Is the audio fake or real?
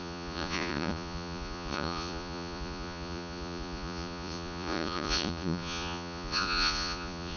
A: fake